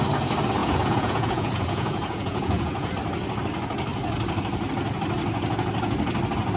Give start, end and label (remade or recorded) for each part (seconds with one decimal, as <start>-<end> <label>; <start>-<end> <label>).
0.0-0.6 recorded; 0.6-2.9 remade; 2.9-6.6 recorded